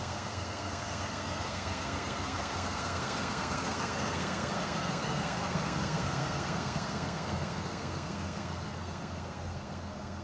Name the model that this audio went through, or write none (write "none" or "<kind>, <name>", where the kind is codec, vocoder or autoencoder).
codec, SNAC